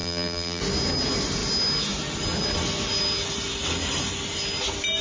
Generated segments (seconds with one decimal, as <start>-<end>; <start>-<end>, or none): 0.0-0.6